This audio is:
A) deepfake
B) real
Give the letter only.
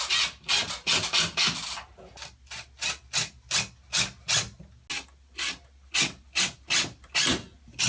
B